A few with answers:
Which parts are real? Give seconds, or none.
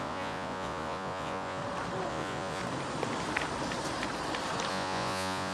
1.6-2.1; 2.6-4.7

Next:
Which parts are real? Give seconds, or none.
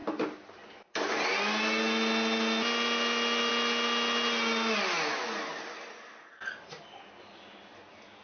0.0-8.2